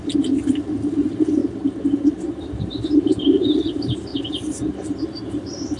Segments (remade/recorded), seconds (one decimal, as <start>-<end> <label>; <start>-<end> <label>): 0.0-1.4 remade; 1.4-2.4 recorded; 2.4-4.1 remade; 4.1-4.7 recorded; 4.7-5.8 remade